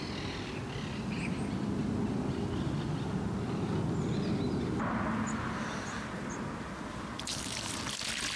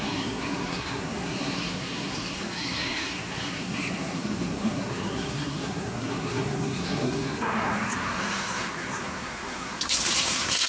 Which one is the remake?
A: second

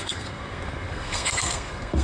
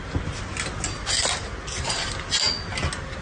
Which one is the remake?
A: first